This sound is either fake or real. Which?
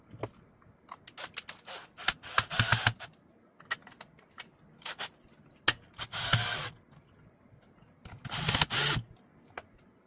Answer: real